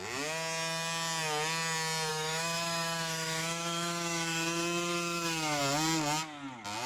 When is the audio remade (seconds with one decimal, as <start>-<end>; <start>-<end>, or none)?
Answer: 2.1-5.6